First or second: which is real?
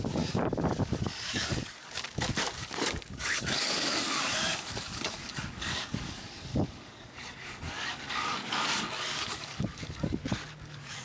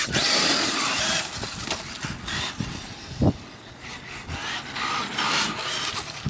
second